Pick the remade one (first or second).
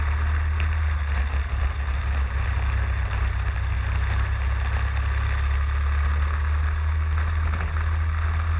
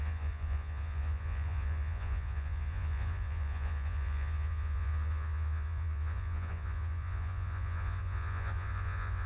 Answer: second